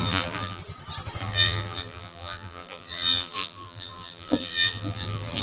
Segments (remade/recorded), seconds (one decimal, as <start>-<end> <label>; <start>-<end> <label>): 0.0-0.6 remade; 0.6-1.2 recorded; 1.2-5.4 remade